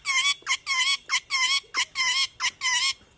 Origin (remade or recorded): recorded